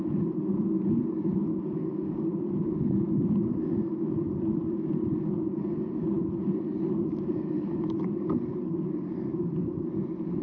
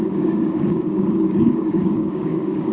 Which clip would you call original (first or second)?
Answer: first